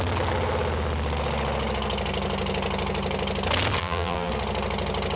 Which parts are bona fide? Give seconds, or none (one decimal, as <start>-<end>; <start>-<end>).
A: 0.0-3.8; 4.3-5.2